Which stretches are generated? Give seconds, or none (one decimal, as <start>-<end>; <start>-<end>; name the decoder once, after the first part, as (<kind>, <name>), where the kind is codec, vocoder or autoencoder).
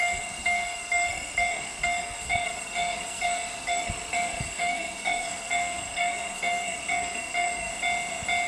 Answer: 0.0-7.7 (codec, SNAC)